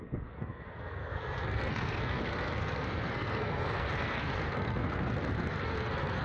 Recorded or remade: remade